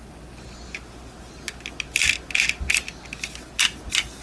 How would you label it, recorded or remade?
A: recorded